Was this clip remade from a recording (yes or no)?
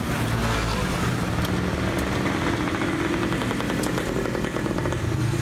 no